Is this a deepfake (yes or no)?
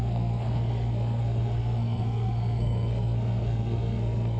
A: yes